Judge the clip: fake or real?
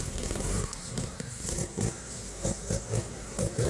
fake